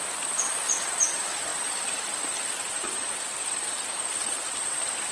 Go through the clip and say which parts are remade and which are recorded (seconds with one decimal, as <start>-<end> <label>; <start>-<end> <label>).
0.0-5.1 recorded